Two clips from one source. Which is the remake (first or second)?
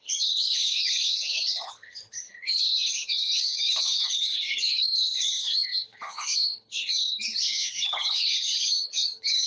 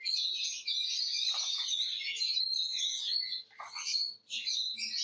first